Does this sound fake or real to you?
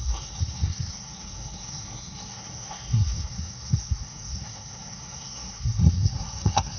fake